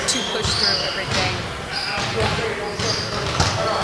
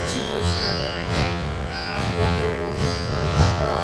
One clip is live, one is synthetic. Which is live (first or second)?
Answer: first